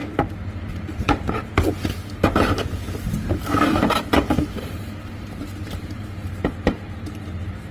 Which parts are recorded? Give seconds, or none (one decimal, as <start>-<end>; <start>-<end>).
0.0-0.7

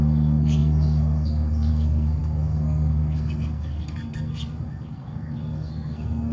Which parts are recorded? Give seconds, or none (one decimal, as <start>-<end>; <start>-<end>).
none

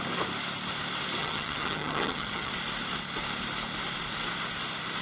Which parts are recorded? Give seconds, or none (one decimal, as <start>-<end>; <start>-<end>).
0.0-1.2; 2.5-5.0

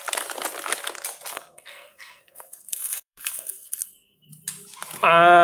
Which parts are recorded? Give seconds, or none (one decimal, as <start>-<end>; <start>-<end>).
0.0-1.3; 4.3-5.4

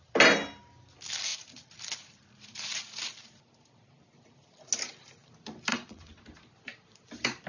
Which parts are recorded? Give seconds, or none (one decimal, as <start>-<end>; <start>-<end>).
0.0-5.7; 6.2-7.5

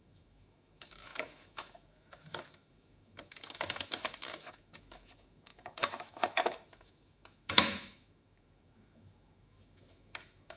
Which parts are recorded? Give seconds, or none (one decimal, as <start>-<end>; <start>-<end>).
none

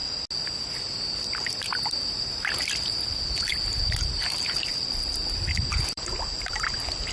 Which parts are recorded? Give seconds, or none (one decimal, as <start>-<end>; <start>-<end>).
0.0-1.1

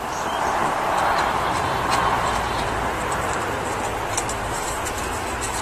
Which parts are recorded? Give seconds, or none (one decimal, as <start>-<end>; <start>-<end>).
0.0-2.1